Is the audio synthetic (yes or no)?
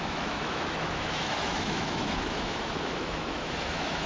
yes